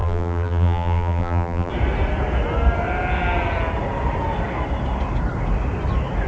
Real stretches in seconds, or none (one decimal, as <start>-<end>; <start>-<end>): 1.7-6.3

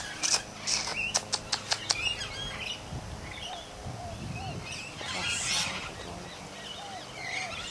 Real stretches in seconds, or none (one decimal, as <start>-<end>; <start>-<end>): 0.9-3.5

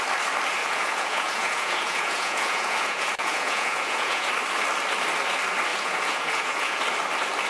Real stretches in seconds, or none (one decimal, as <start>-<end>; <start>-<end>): 0.0-0.6; 4.3-5.7; 6.8-7.5

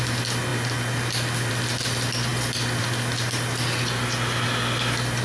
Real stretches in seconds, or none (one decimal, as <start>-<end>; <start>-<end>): 0.0-5.2

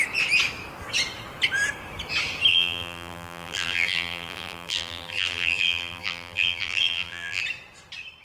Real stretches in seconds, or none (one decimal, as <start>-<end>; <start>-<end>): 0.0-2.5; 7.4-8.2